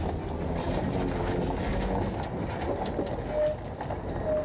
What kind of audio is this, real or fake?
real